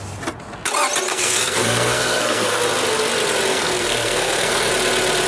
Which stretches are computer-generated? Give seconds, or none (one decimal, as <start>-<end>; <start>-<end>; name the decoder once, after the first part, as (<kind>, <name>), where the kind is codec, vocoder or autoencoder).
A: 1.1-2.6 (codec, SNAC); 3.5-4.7

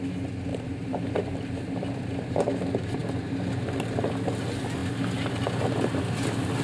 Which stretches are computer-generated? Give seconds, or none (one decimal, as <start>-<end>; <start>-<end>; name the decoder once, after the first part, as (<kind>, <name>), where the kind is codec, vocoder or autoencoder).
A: 0.5-2.3 (vocoder, BigVGAN v2)

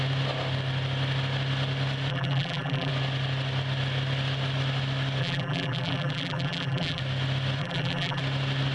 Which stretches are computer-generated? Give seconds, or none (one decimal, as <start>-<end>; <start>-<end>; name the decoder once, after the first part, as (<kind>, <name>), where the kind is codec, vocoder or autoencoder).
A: 2.1-2.9 (vocoder, BigVGAN v2); 5.2-7.0; 7.6-8.2

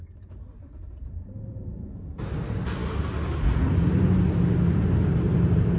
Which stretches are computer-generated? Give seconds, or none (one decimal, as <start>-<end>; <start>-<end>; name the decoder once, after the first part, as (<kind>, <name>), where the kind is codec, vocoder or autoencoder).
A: 0.0-2.8 (vocoder, BigVGAN v2); 4.5-5.8

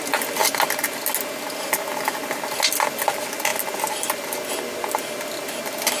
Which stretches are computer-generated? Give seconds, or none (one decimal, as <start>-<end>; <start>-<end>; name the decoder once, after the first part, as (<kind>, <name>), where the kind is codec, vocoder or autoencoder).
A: none

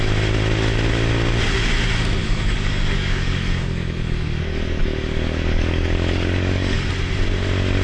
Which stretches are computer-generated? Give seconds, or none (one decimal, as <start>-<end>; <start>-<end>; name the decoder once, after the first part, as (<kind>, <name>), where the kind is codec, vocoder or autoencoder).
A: 2.2-6.9 (codec, DAC)

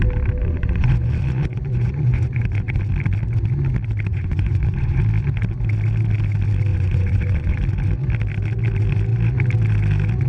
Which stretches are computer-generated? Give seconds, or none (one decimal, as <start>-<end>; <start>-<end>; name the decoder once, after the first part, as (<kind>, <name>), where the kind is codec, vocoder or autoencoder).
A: 0.4-2.8 (vocoder, Vocos); 4.1-5.0; 6.7-7.6

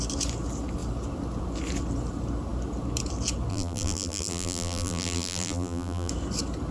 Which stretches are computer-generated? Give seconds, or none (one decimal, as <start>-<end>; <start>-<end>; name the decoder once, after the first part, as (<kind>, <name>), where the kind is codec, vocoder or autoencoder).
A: 3.5-6.1 (vocoder, BigVGAN v2)